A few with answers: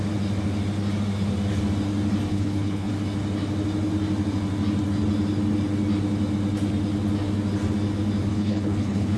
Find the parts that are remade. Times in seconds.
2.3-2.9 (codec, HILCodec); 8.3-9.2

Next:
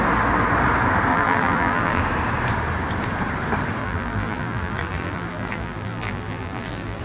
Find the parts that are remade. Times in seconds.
1.1-2.0 (vocoder, BigVGAN v2); 3.8-7.0

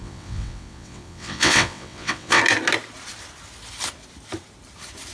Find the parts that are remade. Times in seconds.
0.0-2.4 (vocoder, WaveNeXt)

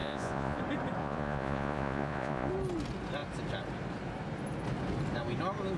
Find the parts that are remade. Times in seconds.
0.0-0.6 (vocoder, Vocos); 1.0-2.5

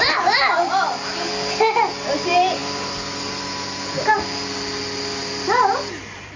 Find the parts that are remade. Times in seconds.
none